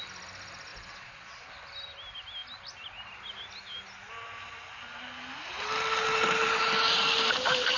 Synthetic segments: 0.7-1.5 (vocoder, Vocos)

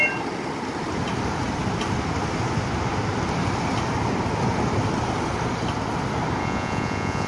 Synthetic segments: 6.4-7.3 (vocoder, Vocos)

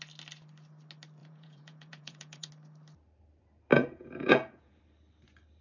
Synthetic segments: 1.2-2.5 (vocoder, Vocos); 3.7-4.8

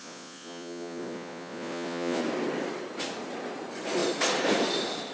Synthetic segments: 0.0-2.2 (vocoder, Vocos)

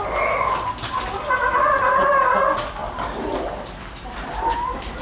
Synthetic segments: none

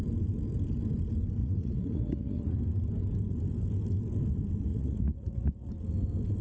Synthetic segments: 1.4-2.6 (vocoder, Vocos); 4.7-5.7

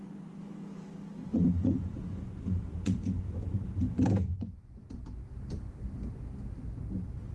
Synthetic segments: 1.3-3.7 (vocoder, Vocos); 4.3-4.9

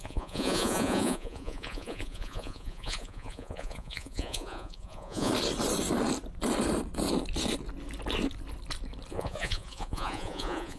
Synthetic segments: 0.0-5.3 (vocoder, Vocos); 9.1-10.8